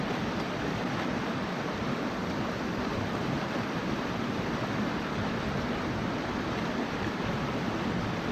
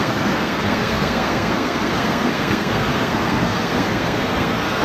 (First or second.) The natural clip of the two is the first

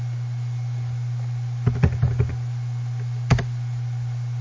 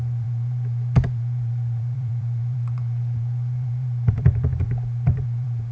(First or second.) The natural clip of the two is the first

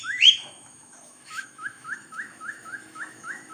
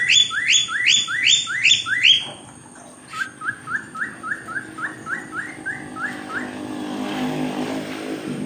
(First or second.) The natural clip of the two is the second